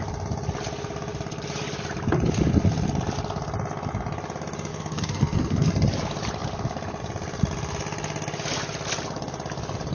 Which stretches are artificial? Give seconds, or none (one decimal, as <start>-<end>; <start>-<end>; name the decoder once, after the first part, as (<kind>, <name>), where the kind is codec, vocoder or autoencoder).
4.7-5.7 (codec, SNAC)